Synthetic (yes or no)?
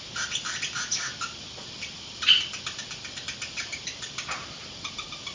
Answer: no